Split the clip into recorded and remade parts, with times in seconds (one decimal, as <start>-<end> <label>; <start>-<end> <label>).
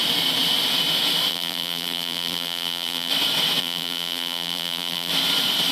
0.0-1.3 recorded; 1.3-3.1 remade; 3.1-3.6 recorded; 3.6-5.1 remade; 5.1-5.7 recorded